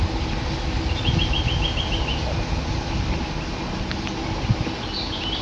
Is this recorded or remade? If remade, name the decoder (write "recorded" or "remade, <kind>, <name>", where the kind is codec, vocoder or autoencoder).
recorded